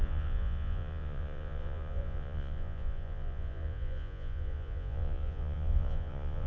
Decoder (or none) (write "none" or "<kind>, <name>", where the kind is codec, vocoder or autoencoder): vocoder, Vocos